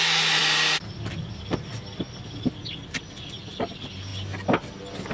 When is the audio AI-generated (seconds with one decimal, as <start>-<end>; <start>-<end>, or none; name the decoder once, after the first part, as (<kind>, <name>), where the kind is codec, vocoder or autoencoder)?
none